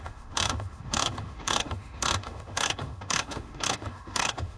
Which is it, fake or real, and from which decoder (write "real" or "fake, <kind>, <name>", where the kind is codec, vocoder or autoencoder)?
fake, autoencoder, DAC-VAE